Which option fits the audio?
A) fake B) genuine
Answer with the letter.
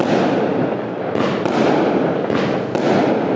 B